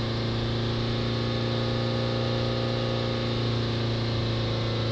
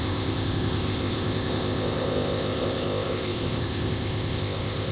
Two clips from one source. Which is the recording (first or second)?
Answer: first